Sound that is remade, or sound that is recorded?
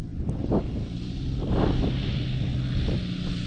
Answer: recorded